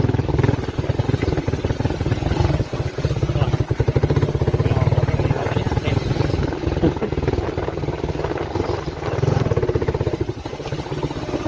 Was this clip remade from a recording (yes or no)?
no